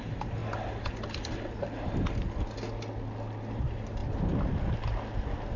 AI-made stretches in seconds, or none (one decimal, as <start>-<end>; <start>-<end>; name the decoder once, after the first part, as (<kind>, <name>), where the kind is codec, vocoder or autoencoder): 0.0-0.4 (vocoder, BigVGAN v2); 3.5-4.0